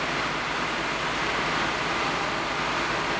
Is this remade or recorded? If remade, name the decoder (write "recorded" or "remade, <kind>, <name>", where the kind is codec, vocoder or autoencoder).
recorded